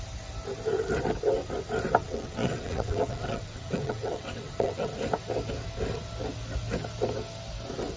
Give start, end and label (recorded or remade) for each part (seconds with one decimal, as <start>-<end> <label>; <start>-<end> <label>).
0.0-2.0 recorded; 2.0-4.9 remade; 4.9-8.0 recorded